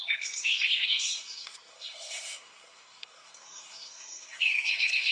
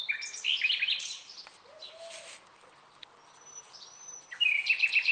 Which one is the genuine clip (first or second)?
second